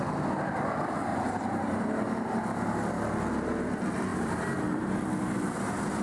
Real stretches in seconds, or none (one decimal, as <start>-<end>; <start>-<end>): 0.0-1.1; 2.9-4.1; 4.6-6.0